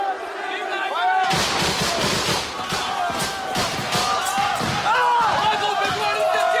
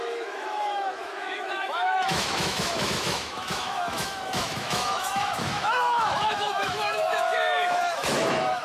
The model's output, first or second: second